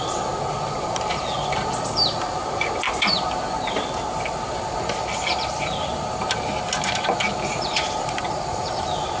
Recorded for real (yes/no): yes